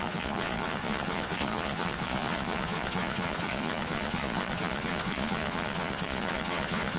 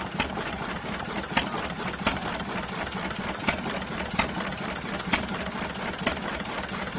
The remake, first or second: first